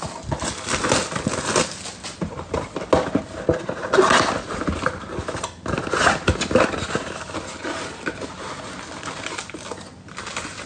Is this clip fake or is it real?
real